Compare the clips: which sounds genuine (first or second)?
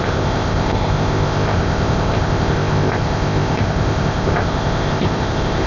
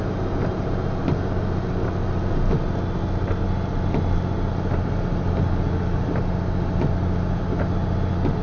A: second